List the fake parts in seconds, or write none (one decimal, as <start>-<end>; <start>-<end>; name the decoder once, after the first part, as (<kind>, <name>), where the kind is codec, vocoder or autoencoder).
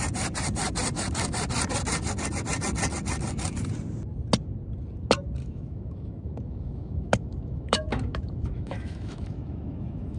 5.4-10.2 (autoencoder, DAC-VAE)